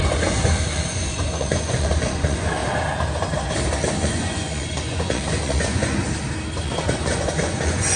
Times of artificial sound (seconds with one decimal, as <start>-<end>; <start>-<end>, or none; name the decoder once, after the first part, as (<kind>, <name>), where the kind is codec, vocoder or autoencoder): 0.0-2.6 (vocoder, Vocos); 4.0-6.0; 6.6-8.0